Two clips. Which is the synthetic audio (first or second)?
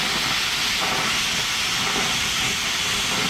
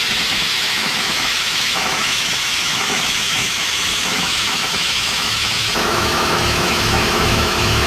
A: second